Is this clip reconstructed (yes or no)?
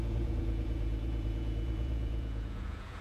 yes